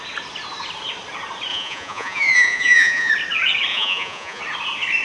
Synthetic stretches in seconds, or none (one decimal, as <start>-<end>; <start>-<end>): 1.5-3.1; 3.7-4.4